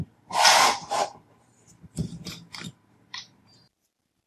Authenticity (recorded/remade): remade